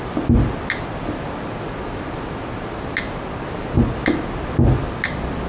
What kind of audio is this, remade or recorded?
recorded